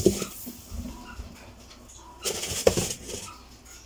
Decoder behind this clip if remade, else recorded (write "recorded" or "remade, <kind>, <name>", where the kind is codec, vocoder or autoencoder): recorded